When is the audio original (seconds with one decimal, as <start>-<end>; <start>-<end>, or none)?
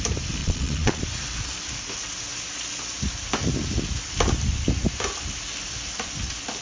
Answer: 0.0-0.4; 1.0-6.6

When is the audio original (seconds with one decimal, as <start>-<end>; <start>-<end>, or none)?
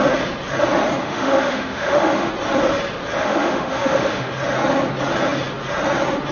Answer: 0.0-1.0; 2.3-3.2; 4.3-6.3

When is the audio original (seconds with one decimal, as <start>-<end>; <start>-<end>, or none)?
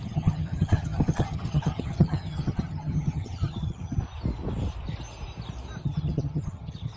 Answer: 4.0-5.8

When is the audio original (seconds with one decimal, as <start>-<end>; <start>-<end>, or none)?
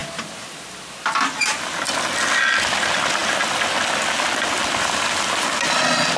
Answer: 0.0-6.2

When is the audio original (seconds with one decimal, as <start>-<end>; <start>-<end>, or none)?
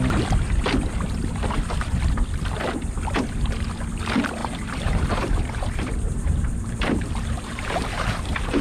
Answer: 0.0-4.4; 8.2-8.6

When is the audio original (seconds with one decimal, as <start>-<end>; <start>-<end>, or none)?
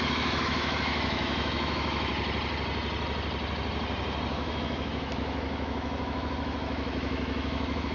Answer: 2.1-4.3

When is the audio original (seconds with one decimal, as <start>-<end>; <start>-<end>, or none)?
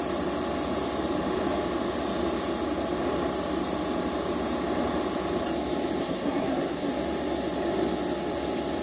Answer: 0.0-6.0; 6.9-8.8